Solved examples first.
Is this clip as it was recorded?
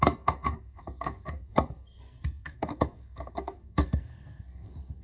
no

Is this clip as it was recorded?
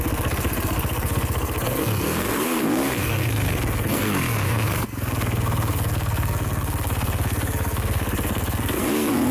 no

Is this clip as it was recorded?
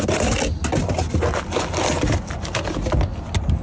yes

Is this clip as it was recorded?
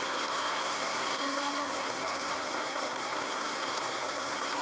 no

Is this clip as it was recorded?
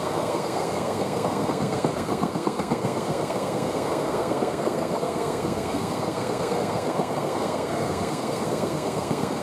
no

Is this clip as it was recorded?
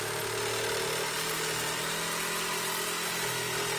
yes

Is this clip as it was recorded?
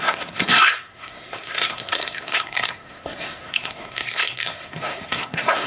no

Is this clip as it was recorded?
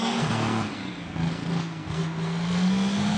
no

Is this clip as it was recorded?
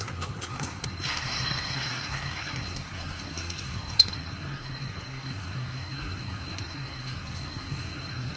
no